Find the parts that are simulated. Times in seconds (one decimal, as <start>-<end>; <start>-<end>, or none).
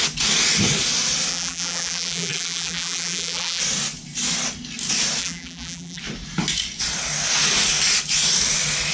1.3-3.6; 5.2-6.0